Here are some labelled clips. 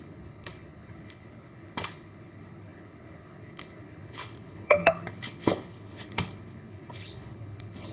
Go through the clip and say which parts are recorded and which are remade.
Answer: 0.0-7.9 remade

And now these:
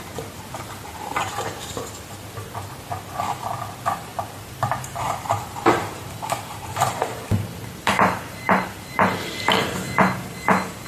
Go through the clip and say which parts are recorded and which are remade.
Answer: 0.0-4.1 recorded; 4.1-9.3 remade; 9.3-10.9 recorded

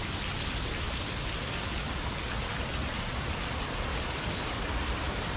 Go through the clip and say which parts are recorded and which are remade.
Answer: 0.0-3.9 recorded; 3.9-4.7 remade; 4.7-5.4 recorded

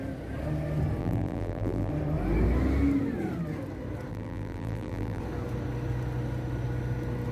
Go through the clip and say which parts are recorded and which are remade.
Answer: 0.0-1.0 recorded; 1.0-1.9 remade; 1.9-4.1 recorded; 4.1-5.2 remade; 5.2-7.3 recorded